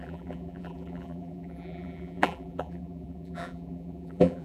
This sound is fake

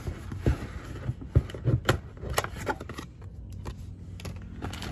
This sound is real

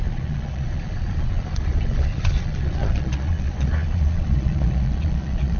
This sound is fake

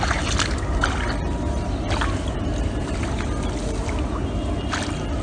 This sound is real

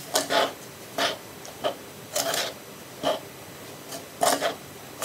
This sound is real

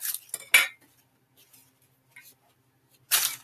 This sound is real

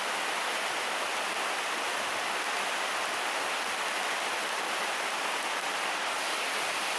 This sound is real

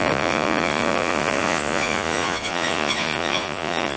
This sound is fake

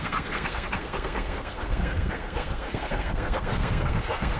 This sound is fake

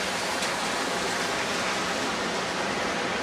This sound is real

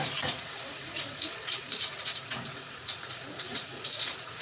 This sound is fake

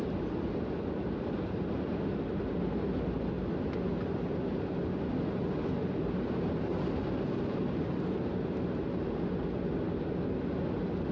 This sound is real